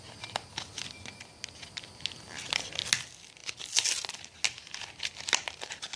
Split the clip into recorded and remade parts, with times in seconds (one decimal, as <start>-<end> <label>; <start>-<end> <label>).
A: 0.0-6.0 recorded